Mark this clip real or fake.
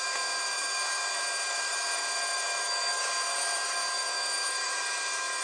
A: fake